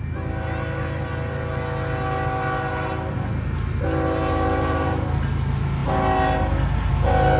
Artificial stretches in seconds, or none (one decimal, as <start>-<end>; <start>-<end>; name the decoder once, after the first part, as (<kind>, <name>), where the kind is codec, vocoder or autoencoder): none